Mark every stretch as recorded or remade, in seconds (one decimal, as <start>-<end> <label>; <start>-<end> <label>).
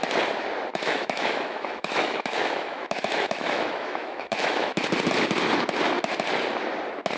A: 0.0-0.7 recorded; 0.7-4.8 remade; 4.8-7.2 recorded